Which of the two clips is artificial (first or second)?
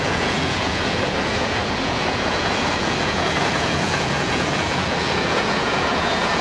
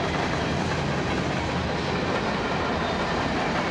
first